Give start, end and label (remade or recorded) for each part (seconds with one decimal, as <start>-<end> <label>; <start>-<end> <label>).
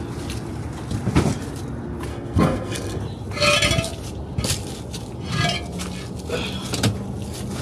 0.0-2.1 recorded; 2.1-3.0 remade; 3.0-7.6 recorded